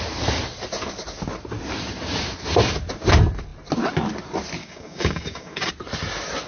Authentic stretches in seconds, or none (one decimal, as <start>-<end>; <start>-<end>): 0.0-4.6; 5.7-6.5